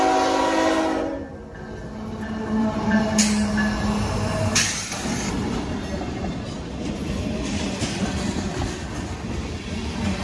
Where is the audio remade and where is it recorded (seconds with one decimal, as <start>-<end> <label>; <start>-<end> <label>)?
0.0-2.6 recorded; 2.6-3.2 remade; 3.2-10.2 recorded